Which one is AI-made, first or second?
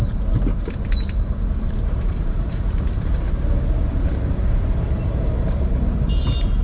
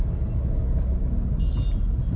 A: first